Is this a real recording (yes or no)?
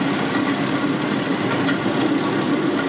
yes